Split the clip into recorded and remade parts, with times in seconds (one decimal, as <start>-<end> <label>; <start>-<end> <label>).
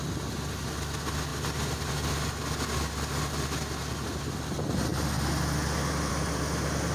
0.0-6.9 recorded